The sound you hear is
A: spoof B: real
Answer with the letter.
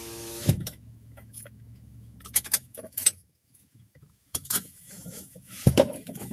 A